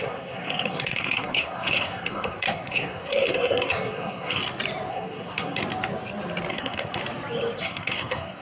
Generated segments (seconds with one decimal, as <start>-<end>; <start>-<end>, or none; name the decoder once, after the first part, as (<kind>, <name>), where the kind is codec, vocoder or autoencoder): 0.0-4.4 (codec, SNAC); 4.9-5.6; 6.5-7.0; 7.6-8.4